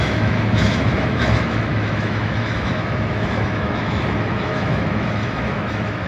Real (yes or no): no